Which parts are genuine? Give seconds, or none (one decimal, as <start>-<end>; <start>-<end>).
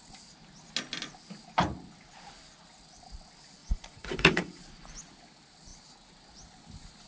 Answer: 0.0-3.6; 4.6-7.1